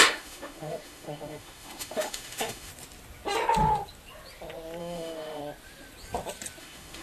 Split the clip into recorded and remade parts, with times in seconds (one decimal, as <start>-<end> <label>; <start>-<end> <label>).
0.0-2.7 remade; 2.7-4.8 recorded; 4.8-5.4 remade; 5.4-6.6 recorded; 6.6-7.0 remade